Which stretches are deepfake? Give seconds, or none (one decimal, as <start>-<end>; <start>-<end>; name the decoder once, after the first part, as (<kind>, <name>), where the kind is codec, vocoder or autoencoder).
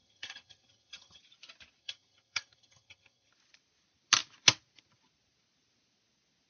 0.0-1.2 (vocoder, HiFi-GAN); 1.8-3.3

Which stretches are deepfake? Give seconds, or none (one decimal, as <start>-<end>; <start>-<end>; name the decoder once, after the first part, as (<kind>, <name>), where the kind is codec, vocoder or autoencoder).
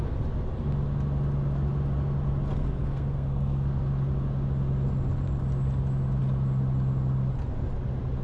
2.6-3.8 (codec, SNAC)